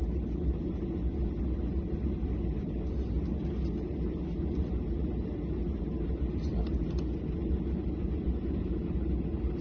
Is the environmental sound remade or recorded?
recorded